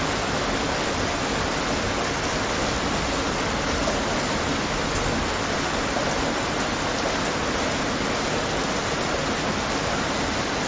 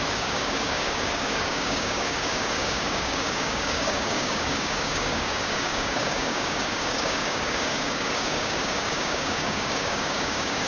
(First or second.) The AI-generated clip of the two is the second